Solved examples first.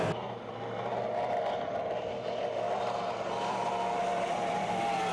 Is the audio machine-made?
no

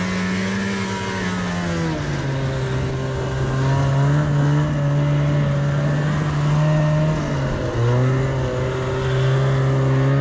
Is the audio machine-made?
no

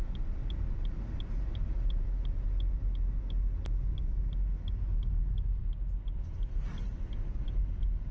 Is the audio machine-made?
no